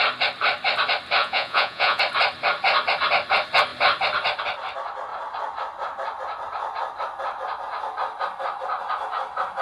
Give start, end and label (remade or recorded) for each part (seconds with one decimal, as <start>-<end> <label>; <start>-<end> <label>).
0.0-1.2 recorded; 1.2-2.0 remade; 2.0-9.6 recorded